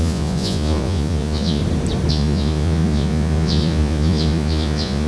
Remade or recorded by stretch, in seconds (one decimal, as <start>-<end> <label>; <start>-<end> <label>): 0.0-1.6 remade; 1.6-2.1 recorded; 2.1-5.1 remade